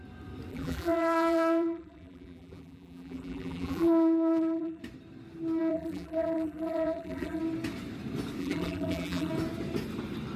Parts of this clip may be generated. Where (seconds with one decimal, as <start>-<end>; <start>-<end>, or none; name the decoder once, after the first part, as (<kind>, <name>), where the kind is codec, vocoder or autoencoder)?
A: 0.5-4.8 (vocoder, BigVGAN v2); 5.6-7.4; 8.4-9.3